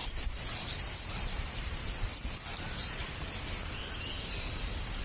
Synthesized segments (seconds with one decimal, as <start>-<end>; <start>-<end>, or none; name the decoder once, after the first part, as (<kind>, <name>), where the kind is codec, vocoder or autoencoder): 0.0-5.0 (vocoder, BigVGAN v2)